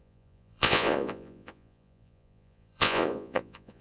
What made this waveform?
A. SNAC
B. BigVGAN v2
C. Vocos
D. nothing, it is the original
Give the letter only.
C